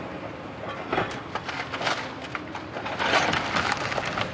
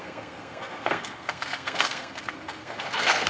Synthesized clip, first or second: second